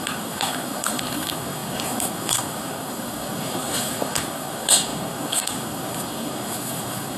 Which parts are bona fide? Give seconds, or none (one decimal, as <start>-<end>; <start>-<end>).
none